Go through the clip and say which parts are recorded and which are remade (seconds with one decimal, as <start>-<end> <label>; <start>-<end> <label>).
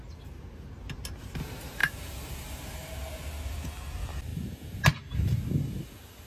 0.0-6.3 recorded